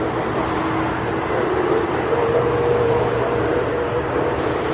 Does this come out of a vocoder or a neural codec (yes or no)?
yes